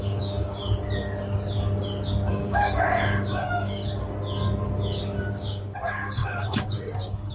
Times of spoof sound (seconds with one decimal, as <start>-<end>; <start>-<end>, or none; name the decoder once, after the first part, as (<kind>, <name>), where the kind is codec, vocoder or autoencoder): 0.0-0.6 (codec, DAC); 2.3-3.8; 5.3-7.3